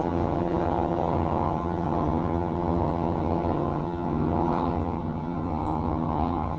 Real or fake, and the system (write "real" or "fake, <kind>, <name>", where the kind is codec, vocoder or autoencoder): fake, vocoder, HiFi-GAN